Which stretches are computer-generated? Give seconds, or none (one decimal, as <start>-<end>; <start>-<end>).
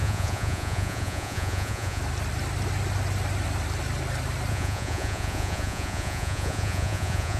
0.0-2.0; 4.5-7.4